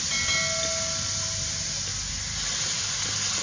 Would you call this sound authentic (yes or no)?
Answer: yes